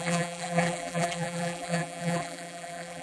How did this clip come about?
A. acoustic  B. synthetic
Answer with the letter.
B